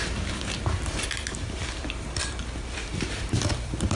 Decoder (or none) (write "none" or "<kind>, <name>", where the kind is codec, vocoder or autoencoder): vocoder, BigVGAN v2